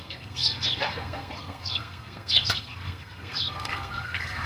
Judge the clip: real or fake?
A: fake